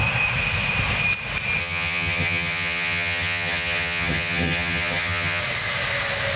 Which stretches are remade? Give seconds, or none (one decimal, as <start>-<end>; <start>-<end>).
1.6-5.4